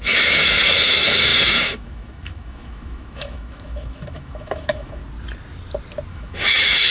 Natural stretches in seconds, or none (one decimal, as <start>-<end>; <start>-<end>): 5.0-6.1

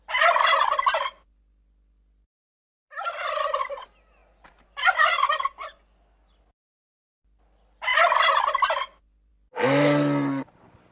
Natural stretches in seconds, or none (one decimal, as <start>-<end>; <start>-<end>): 0.0-10.9

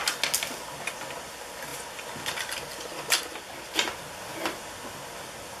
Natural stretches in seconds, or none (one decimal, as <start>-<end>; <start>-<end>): 0.0-5.6

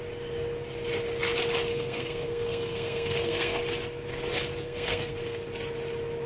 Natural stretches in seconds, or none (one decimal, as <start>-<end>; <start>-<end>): 0.0-1.7; 3.6-4.6; 5.4-6.3